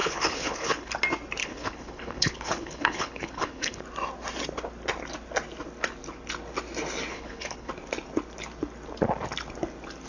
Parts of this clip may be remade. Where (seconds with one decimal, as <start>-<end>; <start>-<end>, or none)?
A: 0.0-0.9; 1.4-3.8; 7.1-7.7